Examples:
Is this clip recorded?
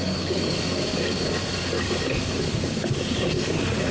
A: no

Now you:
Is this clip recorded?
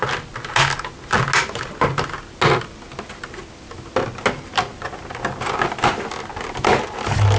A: yes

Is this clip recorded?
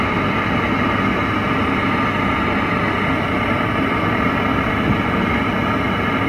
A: yes